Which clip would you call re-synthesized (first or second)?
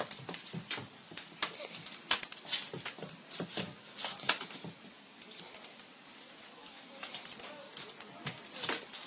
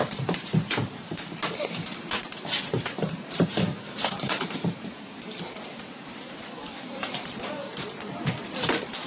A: second